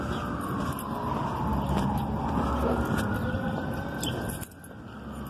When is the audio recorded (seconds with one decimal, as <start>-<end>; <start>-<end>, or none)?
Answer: 0.0-5.3

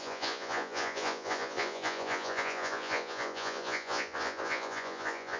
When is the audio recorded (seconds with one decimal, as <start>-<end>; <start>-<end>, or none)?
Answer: none

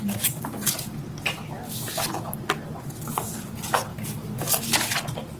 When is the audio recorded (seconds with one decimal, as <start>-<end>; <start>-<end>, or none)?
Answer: 0.0-3.9; 4.6-5.4

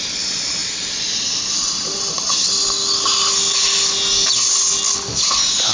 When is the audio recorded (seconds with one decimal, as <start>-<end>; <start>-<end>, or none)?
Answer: 0.0-5.7

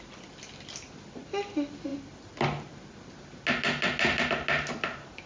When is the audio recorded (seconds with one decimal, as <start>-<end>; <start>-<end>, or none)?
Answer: 0.0-5.3